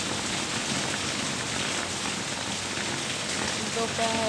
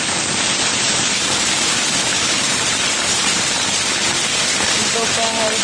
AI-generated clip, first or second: second